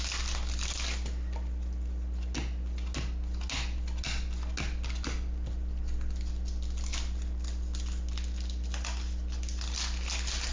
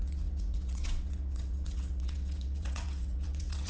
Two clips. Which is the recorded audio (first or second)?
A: first